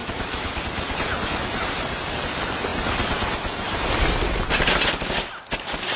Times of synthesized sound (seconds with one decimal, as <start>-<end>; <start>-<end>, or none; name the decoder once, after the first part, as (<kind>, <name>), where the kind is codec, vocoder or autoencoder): 0.0-0.6 (autoencoder, DAC-VAE)